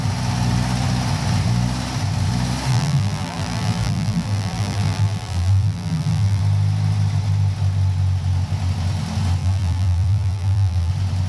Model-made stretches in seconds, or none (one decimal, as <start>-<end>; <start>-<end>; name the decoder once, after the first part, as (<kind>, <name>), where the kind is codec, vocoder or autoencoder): 2.7-6.4 (vocoder, BigVGAN v2); 9.4-10.9